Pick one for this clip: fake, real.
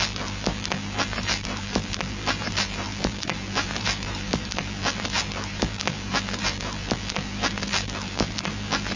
fake